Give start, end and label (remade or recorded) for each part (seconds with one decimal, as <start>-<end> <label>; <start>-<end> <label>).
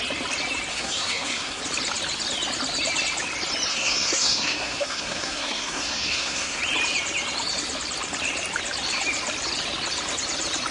0.0-0.7 recorded; 0.7-1.6 remade; 1.6-3.7 recorded; 3.7-6.6 remade; 6.6-10.7 recorded